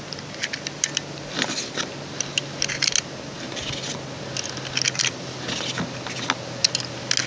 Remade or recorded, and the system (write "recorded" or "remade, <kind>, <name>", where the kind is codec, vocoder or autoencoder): recorded